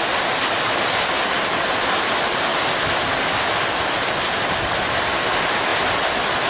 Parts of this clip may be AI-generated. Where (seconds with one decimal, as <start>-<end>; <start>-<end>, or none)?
none